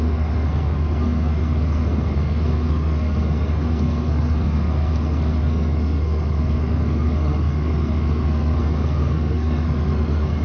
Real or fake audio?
fake